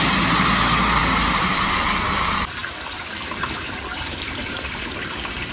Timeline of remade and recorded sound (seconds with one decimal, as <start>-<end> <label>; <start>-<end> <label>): 0.0-1.0 recorded; 1.0-1.6 remade; 1.6-3.9 recorded; 3.9-5.0 remade; 5.0-5.5 recorded